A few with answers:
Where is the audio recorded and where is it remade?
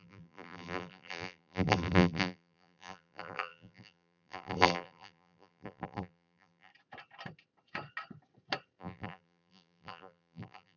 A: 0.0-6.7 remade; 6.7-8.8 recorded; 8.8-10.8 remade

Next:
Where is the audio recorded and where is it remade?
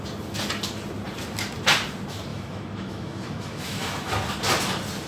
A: 0.0-2.3 recorded; 2.3-4.1 remade; 4.1-5.1 recorded